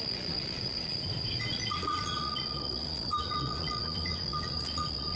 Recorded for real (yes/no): no